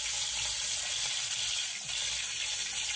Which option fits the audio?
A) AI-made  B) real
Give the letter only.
B